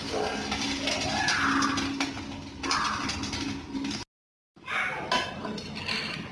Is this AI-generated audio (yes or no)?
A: no